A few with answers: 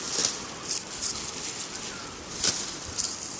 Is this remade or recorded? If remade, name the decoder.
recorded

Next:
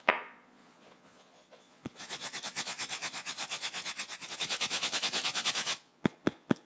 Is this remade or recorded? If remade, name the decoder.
remade, vocoder, Vocos